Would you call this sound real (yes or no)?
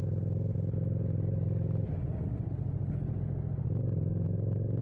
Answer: yes